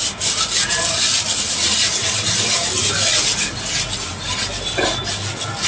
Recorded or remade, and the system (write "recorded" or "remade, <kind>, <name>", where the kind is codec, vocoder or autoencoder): recorded